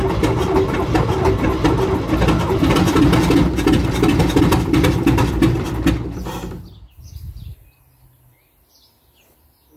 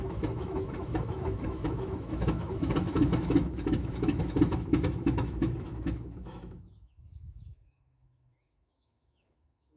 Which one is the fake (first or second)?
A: second